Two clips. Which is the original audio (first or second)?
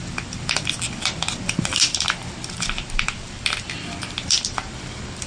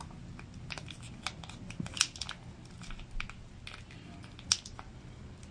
second